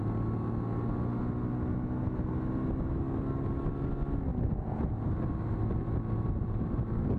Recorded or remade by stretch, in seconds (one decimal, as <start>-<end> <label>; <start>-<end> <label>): 0.0-7.2 recorded